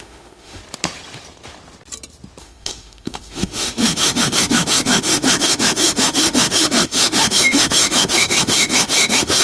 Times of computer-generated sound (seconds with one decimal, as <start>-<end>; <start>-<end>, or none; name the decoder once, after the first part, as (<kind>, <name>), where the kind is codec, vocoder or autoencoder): 0.0-0.6 (autoencoder, DAC-VAE); 2.4-9.4